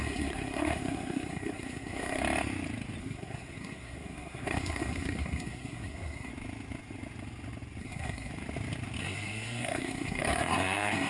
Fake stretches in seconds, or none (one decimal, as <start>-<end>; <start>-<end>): 0.0-2.2; 3.0-6.3; 7.8-8.3; 9.0-11.1